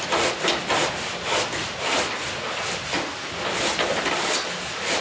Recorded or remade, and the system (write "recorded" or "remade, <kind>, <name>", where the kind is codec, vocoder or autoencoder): recorded